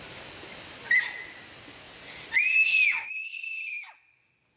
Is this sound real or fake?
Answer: real